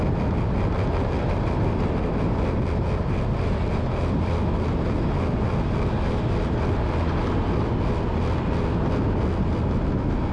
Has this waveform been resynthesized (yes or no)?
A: no